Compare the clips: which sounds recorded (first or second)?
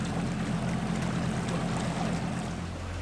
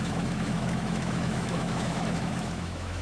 first